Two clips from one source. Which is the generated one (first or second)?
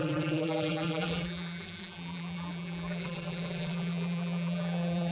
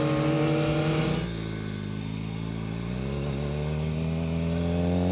first